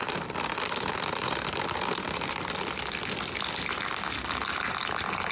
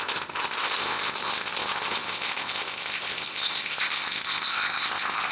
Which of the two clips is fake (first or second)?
second